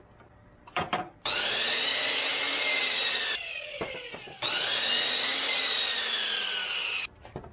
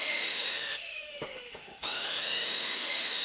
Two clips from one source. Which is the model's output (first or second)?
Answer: second